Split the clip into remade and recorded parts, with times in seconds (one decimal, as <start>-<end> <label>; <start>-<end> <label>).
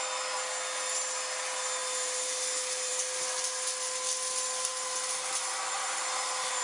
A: 0.0-6.6 recorded